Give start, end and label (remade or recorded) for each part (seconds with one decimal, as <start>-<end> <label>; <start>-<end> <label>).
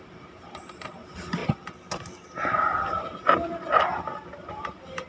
0.0-1.4 remade; 1.4-4.5 recorded; 4.5-5.1 remade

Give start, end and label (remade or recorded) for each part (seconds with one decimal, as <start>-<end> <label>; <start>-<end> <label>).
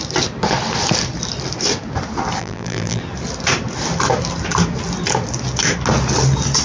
0.0-2.4 recorded; 2.4-3.0 remade; 3.0-6.6 recorded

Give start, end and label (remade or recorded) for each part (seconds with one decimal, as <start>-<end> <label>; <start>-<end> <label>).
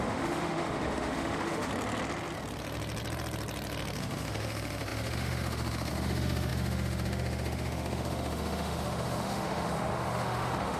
0.0-1.7 remade; 1.7-4.0 recorded; 4.0-10.8 remade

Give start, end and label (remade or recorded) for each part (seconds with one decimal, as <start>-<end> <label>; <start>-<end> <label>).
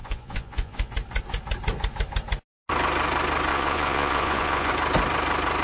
0.0-0.9 remade; 0.9-3.5 recorded; 3.5-4.7 remade; 4.7-5.6 recorded